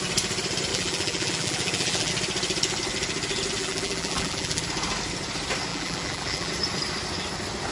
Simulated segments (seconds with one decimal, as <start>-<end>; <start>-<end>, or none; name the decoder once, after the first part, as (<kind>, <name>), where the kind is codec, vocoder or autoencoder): 0.7-2.1 (vocoder, BigVGAN v2); 3.6-4.6; 5.7-6.5